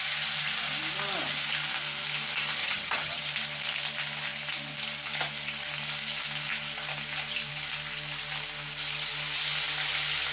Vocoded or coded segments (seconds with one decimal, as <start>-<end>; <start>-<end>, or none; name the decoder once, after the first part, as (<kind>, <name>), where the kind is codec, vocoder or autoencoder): 2.6-3.2 (vocoder, HiFi-GAN)